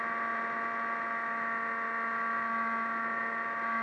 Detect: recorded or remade recorded